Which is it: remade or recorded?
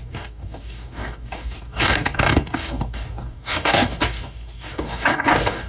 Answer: remade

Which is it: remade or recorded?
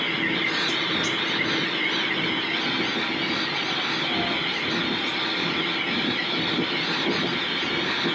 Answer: recorded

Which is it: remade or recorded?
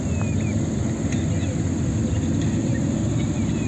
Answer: recorded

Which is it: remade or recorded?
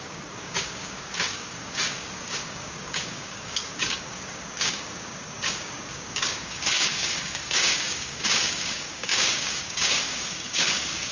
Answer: remade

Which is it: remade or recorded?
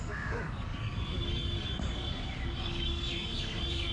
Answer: remade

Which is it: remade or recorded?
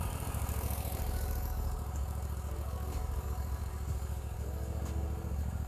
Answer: remade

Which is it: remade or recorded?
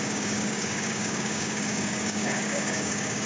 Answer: remade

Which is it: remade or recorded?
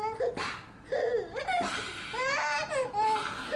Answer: recorded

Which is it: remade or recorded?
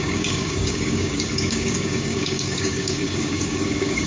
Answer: remade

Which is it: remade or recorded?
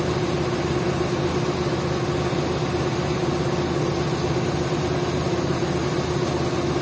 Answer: recorded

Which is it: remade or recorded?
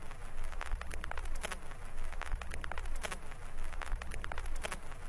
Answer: recorded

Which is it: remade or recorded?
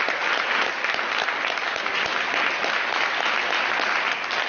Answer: recorded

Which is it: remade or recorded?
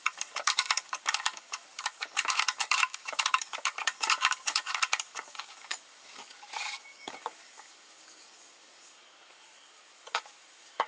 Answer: remade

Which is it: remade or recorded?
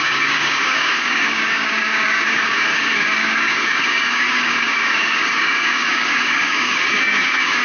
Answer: remade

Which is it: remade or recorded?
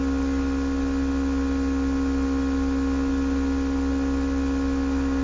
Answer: recorded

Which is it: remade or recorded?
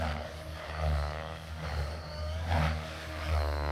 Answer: remade